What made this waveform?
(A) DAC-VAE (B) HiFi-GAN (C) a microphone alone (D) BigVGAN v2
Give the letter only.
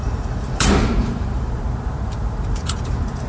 D